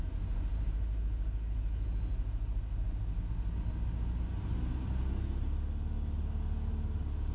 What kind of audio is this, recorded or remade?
recorded